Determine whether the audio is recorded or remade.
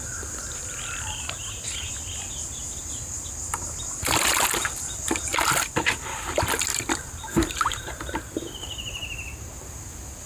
recorded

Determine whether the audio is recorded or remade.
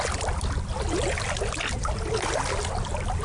recorded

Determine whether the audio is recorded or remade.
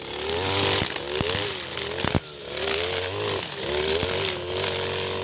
recorded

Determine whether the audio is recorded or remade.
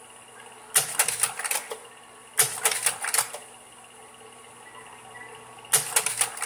recorded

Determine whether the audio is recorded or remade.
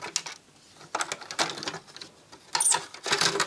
recorded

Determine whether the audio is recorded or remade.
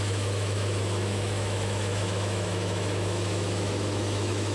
remade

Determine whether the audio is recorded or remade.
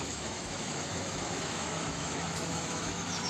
remade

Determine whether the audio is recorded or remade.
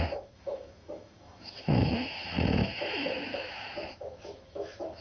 remade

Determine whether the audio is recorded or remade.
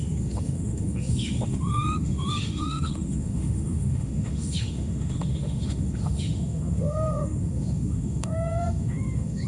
remade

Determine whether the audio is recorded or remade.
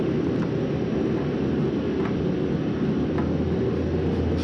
recorded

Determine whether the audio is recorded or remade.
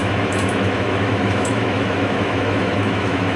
remade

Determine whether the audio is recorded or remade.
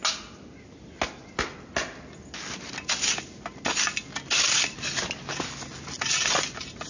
recorded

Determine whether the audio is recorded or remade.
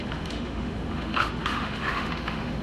remade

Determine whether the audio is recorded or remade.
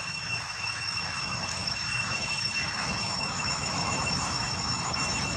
remade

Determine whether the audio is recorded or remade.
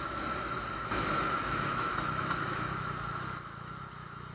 remade